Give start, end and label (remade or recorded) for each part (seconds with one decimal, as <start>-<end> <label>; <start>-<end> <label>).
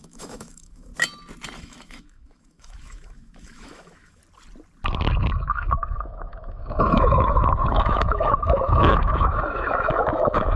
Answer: 0.0-0.9 remade; 0.9-1.6 recorded; 1.6-4.2 remade; 4.2-5.4 recorded; 5.4-10.6 remade